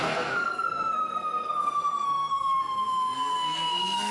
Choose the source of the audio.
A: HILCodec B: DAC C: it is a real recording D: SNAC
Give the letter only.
D